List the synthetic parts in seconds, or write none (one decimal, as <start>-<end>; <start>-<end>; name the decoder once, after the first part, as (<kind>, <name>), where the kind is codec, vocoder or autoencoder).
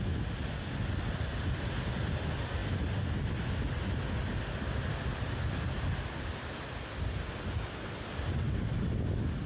none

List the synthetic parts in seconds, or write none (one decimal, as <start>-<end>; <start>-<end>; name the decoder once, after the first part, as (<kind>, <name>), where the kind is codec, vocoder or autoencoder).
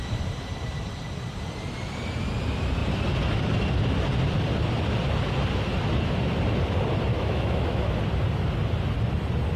7.1-8.0 (autoencoder, DAC-VAE)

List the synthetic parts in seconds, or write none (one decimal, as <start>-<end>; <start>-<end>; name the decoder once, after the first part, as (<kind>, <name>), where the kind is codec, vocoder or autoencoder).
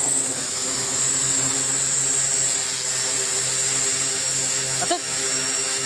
0.0-0.6 (autoencoder, DAC-VAE); 4.1-5.9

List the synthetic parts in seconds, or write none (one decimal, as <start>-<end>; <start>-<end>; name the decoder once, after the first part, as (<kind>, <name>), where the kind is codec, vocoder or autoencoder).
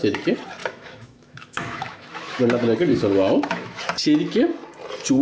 0.6-2.4 (autoencoder, DAC-VAE); 2.9-3.8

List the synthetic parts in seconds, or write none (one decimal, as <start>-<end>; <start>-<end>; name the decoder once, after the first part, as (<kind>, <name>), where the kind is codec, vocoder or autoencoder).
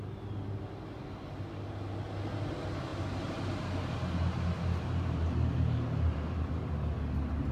none